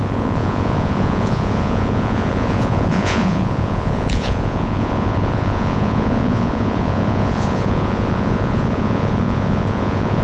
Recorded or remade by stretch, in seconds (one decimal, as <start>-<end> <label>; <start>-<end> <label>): 0.0-10.2 remade